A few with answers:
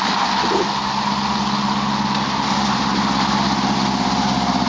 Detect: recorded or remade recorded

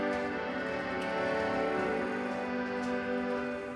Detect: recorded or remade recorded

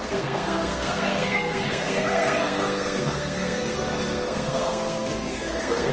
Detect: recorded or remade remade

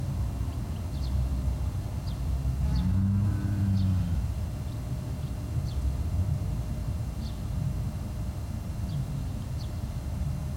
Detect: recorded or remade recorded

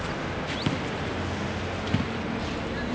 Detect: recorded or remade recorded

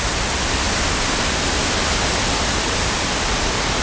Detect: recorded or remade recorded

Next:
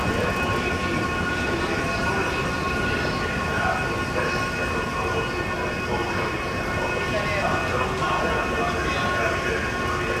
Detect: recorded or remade recorded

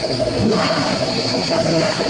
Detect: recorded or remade remade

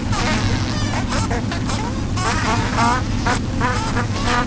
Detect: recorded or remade recorded